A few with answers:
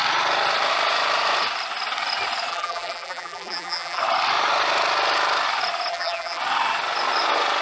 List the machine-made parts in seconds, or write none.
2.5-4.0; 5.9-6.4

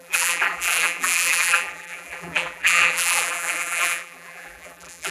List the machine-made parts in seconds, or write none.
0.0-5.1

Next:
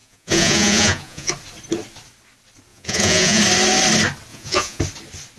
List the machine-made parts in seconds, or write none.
0.0-1.3; 2.7-3.4; 4.3-4.8

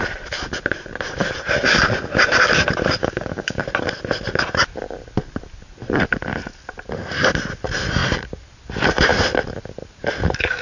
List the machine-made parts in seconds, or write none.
3.0-3.6

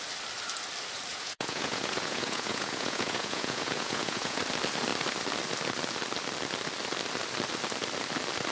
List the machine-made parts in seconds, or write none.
1.1-4.4